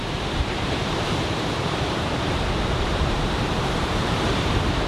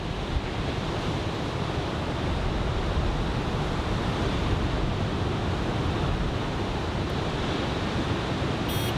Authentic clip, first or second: second